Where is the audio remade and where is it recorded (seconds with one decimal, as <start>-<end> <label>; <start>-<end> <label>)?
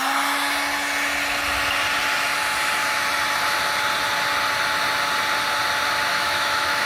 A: 0.0-6.1 recorded; 6.1-6.9 remade